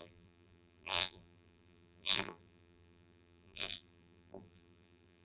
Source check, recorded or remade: remade